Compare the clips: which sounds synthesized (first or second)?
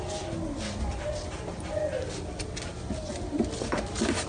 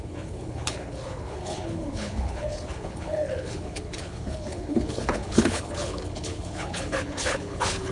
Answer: second